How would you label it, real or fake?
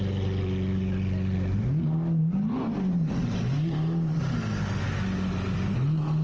real